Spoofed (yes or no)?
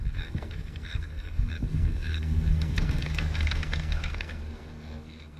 yes